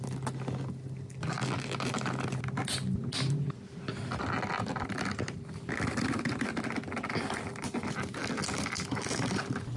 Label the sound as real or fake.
real